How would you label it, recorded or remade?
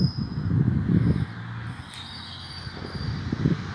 recorded